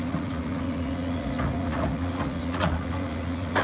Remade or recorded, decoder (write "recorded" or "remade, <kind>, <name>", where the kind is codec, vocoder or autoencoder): remade, vocoder, Vocos